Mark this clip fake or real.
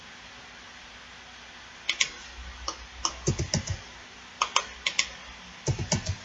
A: real